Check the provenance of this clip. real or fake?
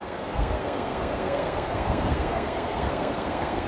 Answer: fake